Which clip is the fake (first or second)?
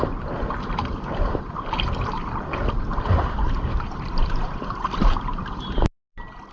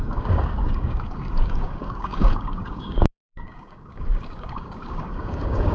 second